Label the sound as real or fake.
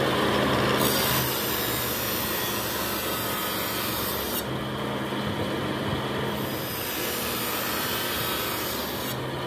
real